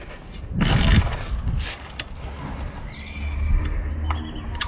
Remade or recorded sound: recorded